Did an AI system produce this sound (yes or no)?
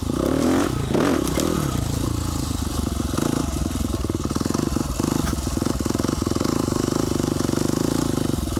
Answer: no